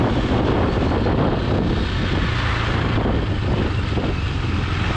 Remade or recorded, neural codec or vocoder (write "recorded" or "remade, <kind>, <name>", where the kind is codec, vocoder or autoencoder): recorded